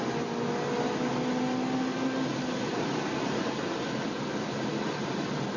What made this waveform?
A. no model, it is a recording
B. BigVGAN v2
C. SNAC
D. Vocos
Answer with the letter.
A